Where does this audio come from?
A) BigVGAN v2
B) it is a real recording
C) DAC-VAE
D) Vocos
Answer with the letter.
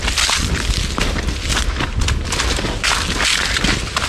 B